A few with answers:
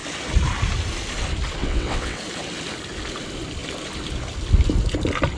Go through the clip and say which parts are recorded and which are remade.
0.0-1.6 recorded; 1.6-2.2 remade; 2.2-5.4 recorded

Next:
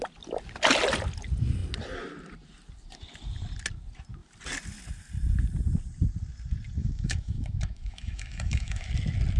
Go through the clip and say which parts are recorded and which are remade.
0.0-6.8 recorded; 6.8-8.9 remade; 8.9-9.4 recorded

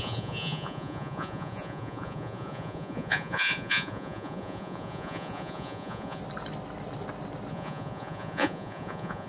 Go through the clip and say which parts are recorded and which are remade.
0.0-6.2 remade; 6.2-7.5 recorded; 7.5-9.3 remade

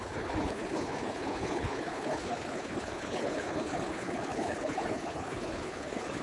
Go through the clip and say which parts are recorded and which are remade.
0.0-6.2 remade

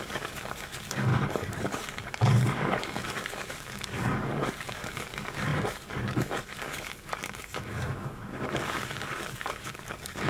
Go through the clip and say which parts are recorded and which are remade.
0.0-10.3 remade